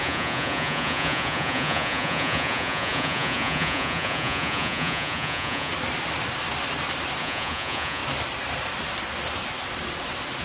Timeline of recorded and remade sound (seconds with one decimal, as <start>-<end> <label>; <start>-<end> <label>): 0.0-5.7 remade; 5.7-7.2 recorded; 7.2-8.0 remade; 8.0-10.4 recorded